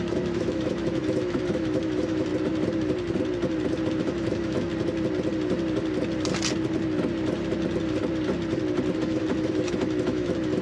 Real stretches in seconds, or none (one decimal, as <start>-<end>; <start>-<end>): 2.3-3.9; 4.7-9.0

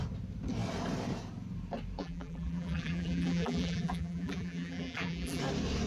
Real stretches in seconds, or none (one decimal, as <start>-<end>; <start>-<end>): 0.0-2.0; 5.4-5.9

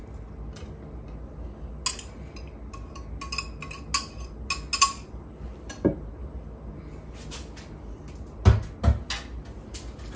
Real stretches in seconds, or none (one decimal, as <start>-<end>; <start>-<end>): 0.0-10.2

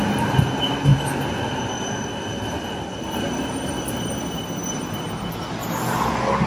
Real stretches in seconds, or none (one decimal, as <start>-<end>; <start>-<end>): 0.0-6.5

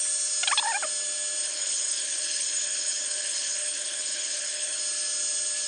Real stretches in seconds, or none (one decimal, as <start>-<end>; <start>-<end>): 0.0-1.4; 4.8-5.7

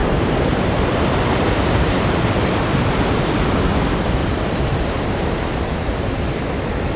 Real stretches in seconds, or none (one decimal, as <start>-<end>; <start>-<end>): 3.2-4.2; 6.5-7.0